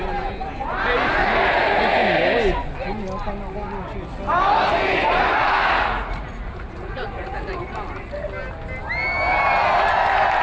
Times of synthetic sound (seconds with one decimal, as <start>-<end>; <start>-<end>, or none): 5.3-7.6